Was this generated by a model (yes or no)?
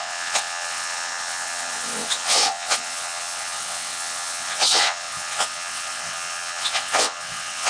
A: yes